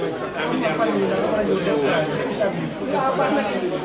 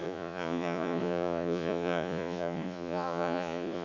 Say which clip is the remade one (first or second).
second